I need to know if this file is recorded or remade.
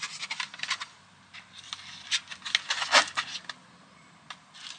recorded